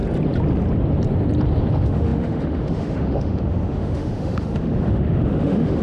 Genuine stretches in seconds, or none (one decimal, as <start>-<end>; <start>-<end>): 0.0-1.7